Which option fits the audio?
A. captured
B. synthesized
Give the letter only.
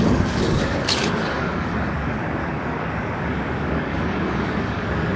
B